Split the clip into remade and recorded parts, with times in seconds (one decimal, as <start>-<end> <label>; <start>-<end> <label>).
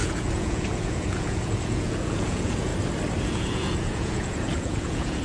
0.0-2.7 remade; 2.7-3.2 recorded; 3.2-5.2 remade